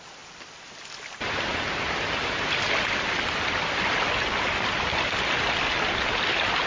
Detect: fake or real real